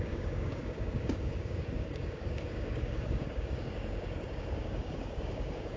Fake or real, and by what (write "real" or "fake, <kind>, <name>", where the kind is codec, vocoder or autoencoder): fake, codec, DAC